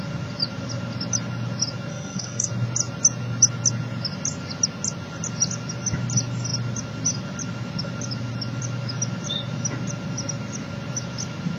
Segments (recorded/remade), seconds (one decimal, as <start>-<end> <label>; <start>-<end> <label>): 0.0-1.9 recorded; 1.9-2.5 remade; 2.5-11.6 recorded